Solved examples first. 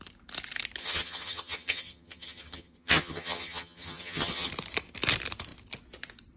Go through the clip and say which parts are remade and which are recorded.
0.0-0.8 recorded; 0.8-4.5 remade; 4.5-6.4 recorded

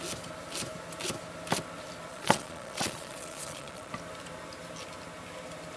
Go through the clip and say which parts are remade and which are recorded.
0.0-2.1 recorded; 2.1-3.9 remade; 3.9-5.8 recorded

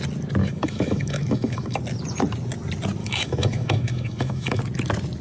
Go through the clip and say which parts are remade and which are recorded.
0.0-0.4 recorded; 0.4-1.8 remade; 1.8-3.0 recorded; 3.0-4.6 remade; 4.6-5.2 recorded